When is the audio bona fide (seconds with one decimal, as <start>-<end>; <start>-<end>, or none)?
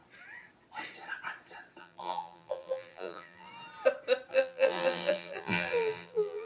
0.0-1.8; 3.5-4.3